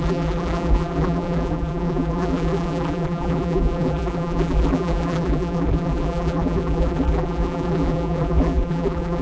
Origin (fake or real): fake